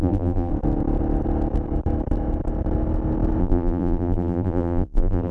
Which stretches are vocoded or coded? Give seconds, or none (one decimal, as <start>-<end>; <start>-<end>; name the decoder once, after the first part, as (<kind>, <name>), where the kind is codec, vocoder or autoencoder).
0.0-0.5 (vocoder, BigVGAN v2); 3.4-5.3